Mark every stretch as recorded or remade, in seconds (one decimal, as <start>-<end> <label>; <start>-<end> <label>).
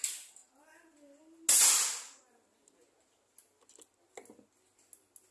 0.0-5.3 recorded